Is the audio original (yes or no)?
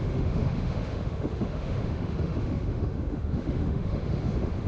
no